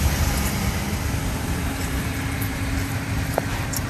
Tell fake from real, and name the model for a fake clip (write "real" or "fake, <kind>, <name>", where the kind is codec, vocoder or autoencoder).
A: real